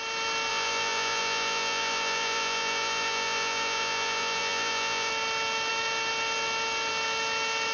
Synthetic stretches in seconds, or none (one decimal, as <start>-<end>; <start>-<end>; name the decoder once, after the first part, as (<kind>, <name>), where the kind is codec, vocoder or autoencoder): 0.5-5.1 (vocoder, Vocos)